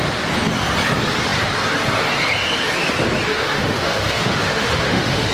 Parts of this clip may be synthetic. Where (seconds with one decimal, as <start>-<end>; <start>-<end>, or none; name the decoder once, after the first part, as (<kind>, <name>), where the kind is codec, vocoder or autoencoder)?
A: 3.3-5.3 (autoencoder, DAC-VAE)